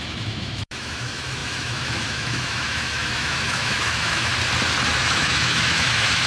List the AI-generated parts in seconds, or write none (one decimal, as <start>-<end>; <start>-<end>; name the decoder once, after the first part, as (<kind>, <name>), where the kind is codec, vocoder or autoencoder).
0.0-4.3 (autoencoder, DAC-VAE); 5.0-6.3